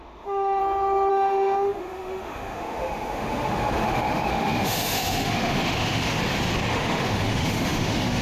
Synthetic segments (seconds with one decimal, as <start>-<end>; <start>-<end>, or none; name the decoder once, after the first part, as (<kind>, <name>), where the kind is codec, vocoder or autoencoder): 0.0-0.6 (autoencoder, DAC-VAE); 1.1-6.2; 6.7-8.2